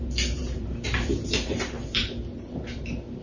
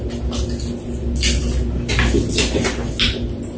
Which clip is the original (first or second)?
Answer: second